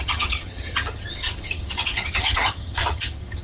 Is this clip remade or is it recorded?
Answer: remade